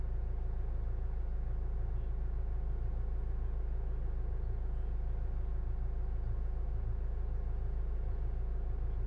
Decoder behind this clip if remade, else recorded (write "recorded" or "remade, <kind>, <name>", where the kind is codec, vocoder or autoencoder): recorded